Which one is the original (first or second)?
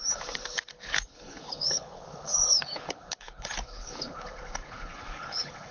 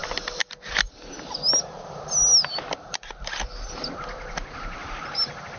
second